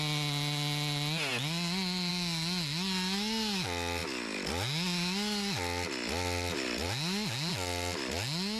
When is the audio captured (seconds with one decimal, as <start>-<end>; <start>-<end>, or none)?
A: 0.0-8.6